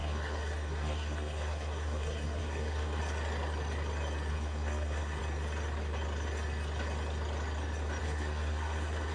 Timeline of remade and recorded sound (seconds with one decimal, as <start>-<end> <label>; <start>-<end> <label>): 0.0-3.0 remade; 3.0-4.3 recorded; 4.3-5.2 remade; 5.2-8.0 recorded; 8.0-9.1 remade